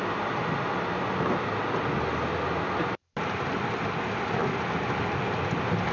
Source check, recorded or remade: recorded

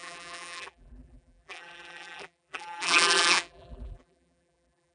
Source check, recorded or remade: remade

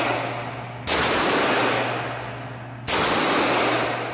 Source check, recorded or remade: recorded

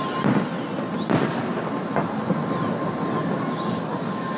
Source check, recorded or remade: recorded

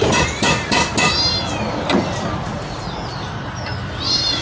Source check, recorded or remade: recorded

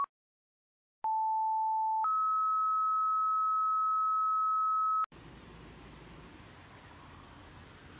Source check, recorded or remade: recorded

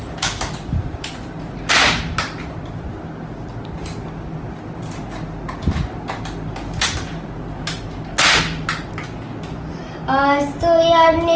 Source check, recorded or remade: recorded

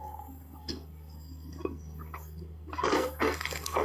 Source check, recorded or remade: remade